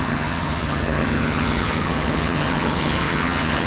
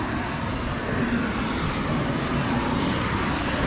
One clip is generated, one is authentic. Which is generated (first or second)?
first